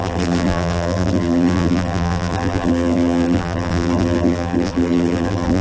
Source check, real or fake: fake